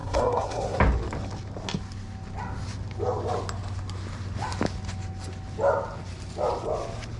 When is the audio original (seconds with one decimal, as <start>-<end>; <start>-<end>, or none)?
0.8-7.2